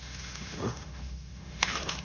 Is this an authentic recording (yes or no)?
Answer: no